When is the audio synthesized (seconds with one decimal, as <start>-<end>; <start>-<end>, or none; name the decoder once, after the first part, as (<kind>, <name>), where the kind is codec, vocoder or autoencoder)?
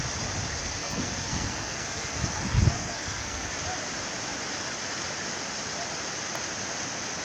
0.8-3.5 (codec, SNAC)